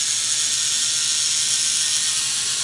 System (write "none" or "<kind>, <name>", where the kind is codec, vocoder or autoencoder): none